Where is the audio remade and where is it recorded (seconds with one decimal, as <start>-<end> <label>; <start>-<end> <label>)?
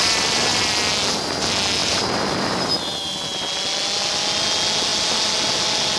0.0-1.8 recorded; 1.8-2.7 remade; 2.7-6.0 recorded